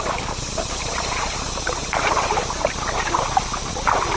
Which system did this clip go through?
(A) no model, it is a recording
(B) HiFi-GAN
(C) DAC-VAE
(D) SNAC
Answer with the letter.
A